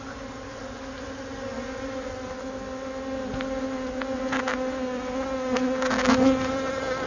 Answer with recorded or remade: recorded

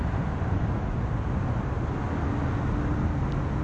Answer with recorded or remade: recorded